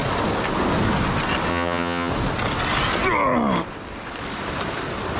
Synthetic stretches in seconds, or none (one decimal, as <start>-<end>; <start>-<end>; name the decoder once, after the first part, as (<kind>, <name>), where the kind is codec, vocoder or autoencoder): 1.5-2.1 (vocoder, HiFi-GAN)